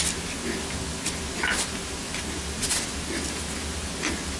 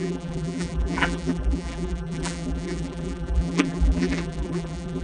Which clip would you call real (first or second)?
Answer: first